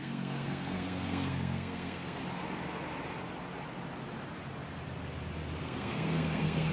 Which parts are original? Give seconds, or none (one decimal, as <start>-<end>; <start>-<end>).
2.2-5.6